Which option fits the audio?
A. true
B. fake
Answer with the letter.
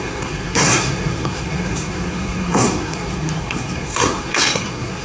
B